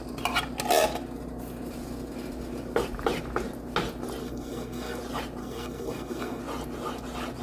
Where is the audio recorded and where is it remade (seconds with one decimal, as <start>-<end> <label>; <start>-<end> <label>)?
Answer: 0.0-4.2 recorded; 4.2-5.0 remade; 5.0-5.4 recorded; 5.4-6.4 remade; 6.4-7.4 recorded